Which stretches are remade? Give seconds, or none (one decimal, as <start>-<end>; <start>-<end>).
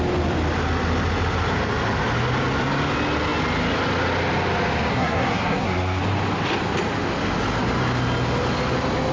4.9-6.0